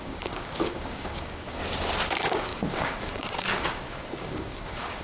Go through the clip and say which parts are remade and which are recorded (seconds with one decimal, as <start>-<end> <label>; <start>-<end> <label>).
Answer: 0.0-1.6 remade; 1.6-2.1 recorded; 2.1-5.0 remade